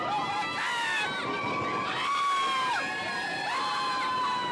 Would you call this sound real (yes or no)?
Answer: yes